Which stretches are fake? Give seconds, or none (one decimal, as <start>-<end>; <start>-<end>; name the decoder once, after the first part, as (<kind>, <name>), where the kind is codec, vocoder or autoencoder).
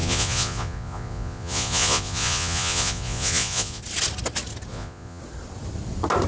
0.0-3.8 (vocoder, Vocos); 4.7-5.2